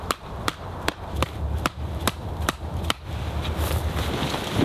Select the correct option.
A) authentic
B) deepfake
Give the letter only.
B